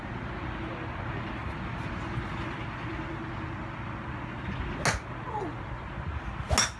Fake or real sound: real